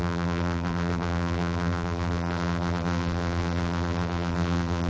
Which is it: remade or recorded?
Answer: remade